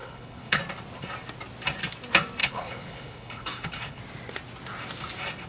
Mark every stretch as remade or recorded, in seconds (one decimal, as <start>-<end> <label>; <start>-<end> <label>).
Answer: 0.0-0.6 remade; 0.6-2.4 recorded; 2.4-4.0 remade; 4.0-5.5 recorded